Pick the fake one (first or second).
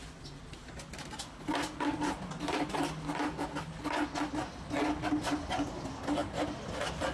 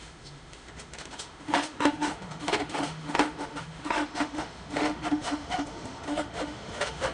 second